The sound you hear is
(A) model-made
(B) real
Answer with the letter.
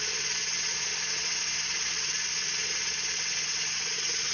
A